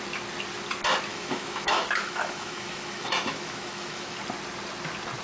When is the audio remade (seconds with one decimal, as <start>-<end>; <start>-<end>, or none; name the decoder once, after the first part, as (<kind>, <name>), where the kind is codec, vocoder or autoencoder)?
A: 1.1-4.2 (autoencoder, DAC-VAE)